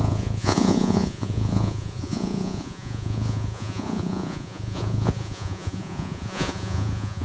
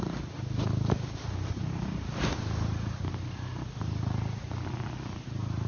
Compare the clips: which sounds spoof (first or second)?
first